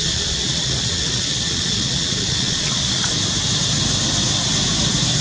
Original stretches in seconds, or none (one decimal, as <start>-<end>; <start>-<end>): 3.1-5.2